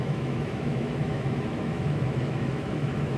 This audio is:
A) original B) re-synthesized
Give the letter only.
B